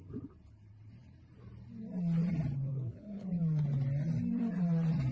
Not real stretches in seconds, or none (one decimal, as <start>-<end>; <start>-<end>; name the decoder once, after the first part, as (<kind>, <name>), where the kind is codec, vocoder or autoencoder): 2.7-3.4 (codec, HILCodec)